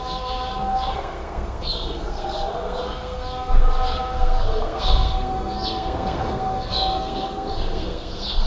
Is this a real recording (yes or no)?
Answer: no